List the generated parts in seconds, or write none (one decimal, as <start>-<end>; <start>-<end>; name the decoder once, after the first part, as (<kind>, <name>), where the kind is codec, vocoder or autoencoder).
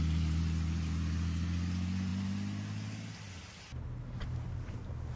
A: none